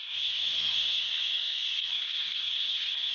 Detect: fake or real fake